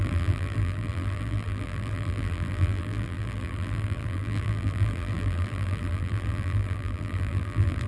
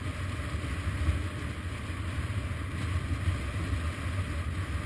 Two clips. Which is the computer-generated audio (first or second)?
first